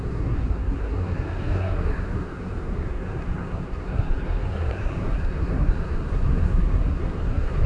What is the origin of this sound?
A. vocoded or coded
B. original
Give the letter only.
A